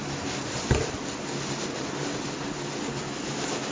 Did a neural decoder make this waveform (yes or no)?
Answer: no